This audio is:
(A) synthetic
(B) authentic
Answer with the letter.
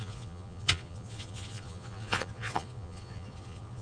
A